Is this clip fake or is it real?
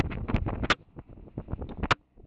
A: real